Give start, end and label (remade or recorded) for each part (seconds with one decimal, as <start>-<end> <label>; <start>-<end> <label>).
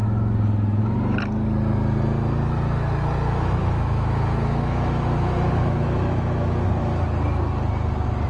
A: 0.0-3.6 recorded; 3.6-6.7 remade; 6.7-8.3 recorded